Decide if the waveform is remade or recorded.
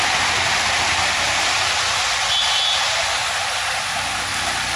recorded